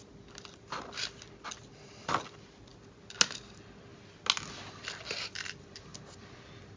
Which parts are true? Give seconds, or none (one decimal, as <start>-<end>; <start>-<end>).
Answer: 0.0-6.8